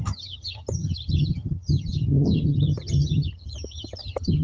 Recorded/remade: remade